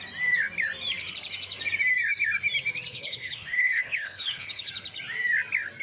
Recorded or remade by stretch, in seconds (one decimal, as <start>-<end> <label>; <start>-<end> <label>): 0.0-2.9 recorded; 2.9-4.7 remade; 4.7-5.8 recorded